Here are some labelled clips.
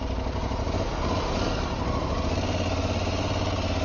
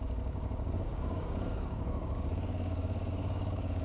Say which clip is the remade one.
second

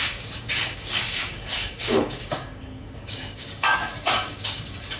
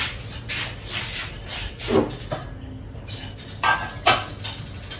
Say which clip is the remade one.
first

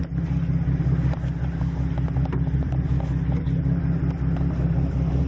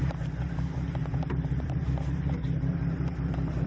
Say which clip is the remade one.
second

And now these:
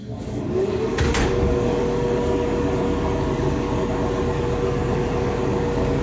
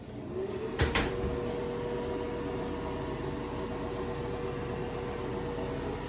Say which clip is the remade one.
first